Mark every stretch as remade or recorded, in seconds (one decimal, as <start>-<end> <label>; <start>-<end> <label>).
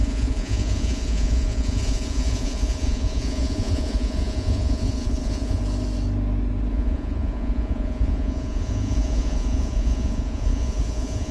0.0-5.6 remade; 5.6-6.7 recorded; 6.7-11.3 remade